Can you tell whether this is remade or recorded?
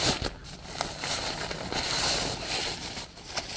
recorded